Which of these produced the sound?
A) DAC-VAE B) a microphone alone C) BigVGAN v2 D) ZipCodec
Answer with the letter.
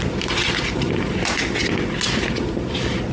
B